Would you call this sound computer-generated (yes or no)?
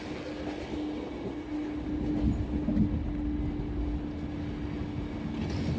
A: no